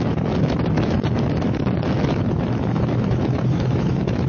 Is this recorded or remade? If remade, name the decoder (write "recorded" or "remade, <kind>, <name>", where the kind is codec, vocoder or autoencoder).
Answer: remade, autoencoder, DAC-VAE